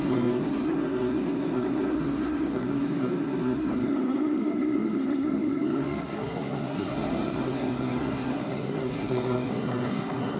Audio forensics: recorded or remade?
remade